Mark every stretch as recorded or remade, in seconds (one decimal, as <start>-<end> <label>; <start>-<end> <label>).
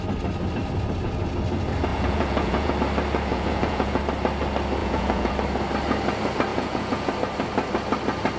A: 0.0-1.9 recorded; 1.9-2.7 remade; 2.7-3.3 recorded; 3.3-4.0 remade; 4.0-4.8 recorded; 4.8-5.3 remade; 5.3-6.5 recorded; 6.5-7.1 remade; 7.1-8.4 recorded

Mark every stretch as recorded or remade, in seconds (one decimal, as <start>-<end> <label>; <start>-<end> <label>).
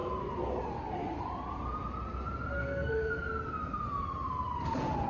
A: 0.0-2.6 recorded; 2.6-3.1 remade; 3.1-5.1 recorded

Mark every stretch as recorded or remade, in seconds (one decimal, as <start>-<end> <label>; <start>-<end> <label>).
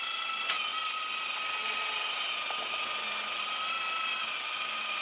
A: 0.0-0.7 remade; 0.7-3.7 recorded; 3.7-5.0 remade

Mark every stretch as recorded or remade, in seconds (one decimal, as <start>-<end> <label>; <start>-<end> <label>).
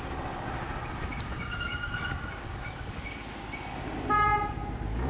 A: 0.0-1.1 recorded; 1.1-3.0 remade; 3.0-5.1 recorded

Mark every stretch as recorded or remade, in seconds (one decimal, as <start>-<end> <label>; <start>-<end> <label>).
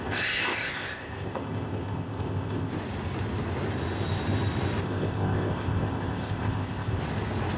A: 0.0-2.7 remade; 2.7-4.8 recorded; 4.8-7.0 remade; 7.0-7.6 recorded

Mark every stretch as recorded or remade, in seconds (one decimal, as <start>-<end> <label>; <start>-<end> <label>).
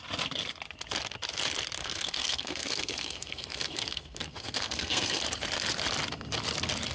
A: 0.0-1.8 recorded; 1.8-5.2 remade; 5.2-6.9 recorded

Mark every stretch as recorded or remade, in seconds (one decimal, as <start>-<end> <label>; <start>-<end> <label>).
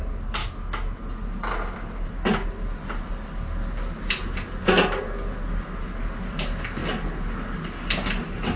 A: 0.0-0.4 recorded; 0.4-1.0 remade; 1.0-8.6 recorded